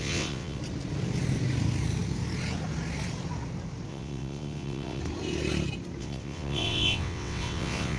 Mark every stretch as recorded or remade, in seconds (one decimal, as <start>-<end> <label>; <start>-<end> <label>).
0.0-0.6 remade; 0.6-3.9 recorded; 3.9-5.0 remade; 5.0-6.0 recorded; 6.0-8.0 remade